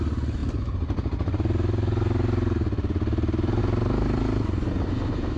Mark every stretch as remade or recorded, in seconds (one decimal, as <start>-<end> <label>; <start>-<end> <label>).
0.0-5.4 recorded